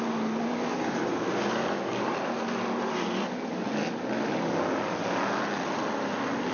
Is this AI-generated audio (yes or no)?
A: no